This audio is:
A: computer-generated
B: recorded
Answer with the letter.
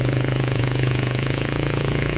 A